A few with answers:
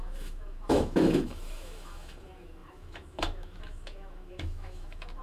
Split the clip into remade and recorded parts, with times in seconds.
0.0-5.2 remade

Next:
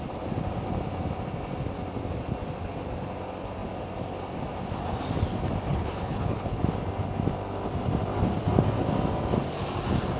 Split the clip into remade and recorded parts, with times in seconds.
0.0-5.7 recorded; 5.7-6.6 remade; 6.6-10.2 recorded

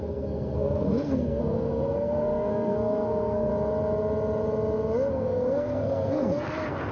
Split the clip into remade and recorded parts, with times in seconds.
0.0-3.5 remade; 3.5-5.1 recorded; 5.1-6.9 remade